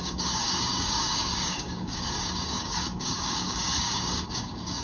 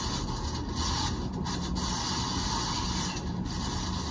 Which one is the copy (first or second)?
first